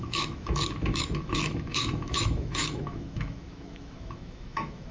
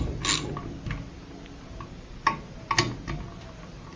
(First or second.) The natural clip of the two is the second